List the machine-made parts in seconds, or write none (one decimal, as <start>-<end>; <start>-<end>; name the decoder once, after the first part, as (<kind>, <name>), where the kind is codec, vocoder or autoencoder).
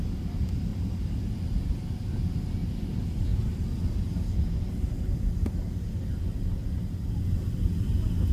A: none